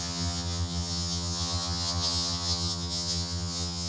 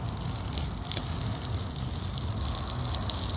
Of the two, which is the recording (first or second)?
second